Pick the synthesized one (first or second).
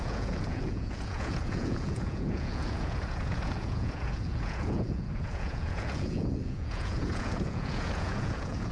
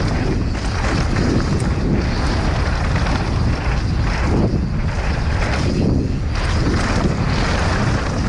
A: first